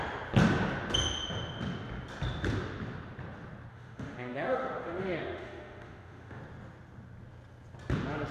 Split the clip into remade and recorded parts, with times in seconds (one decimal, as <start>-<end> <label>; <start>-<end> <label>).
0.0-3.7 recorded; 3.7-6.4 remade; 6.4-8.3 recorded

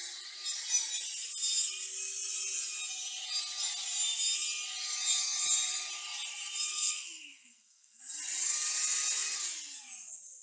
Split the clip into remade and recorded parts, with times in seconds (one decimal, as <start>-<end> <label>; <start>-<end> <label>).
0.0-6.7 recorded; 6.7-8.0 remade; 8.0-10.4 recorded